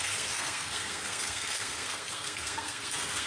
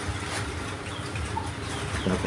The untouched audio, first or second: second